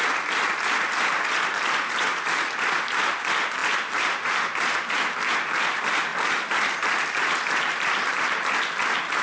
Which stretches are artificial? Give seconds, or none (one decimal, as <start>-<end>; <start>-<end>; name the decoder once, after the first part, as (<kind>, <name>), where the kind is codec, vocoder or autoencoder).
none